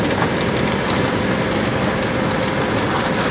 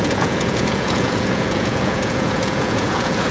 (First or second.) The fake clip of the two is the second